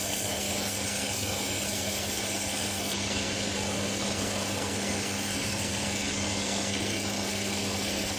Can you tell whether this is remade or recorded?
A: remade